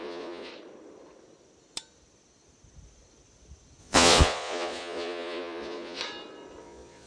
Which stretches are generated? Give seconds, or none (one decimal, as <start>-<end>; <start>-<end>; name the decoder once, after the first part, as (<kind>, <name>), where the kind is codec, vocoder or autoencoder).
0.0-0.5 (vocoder, Vocos); 3.8-6.0; 6.6-7.1